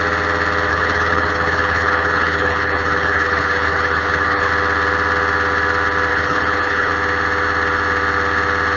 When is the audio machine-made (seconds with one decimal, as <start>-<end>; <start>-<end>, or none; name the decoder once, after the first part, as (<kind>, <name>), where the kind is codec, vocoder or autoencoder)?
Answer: 0.7-4.5 (codec, HILCodec); 6.1-6.9